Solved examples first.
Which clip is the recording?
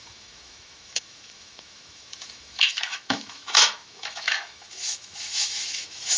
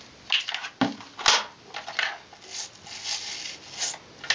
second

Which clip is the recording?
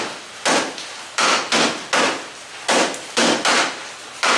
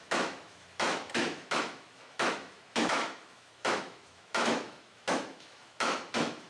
first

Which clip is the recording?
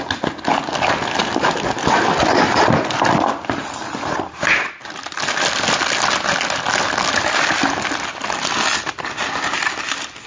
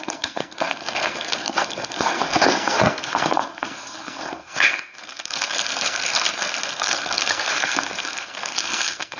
first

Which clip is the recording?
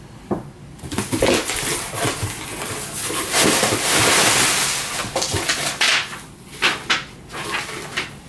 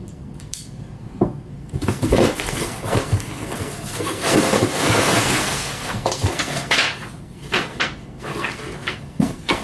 first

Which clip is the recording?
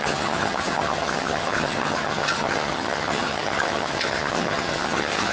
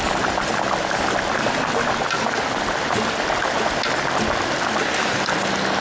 second